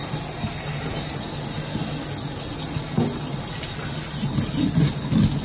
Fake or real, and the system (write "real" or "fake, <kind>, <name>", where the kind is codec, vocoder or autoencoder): real